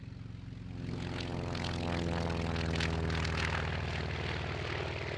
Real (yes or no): yes